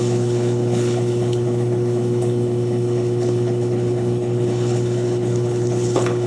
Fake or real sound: fake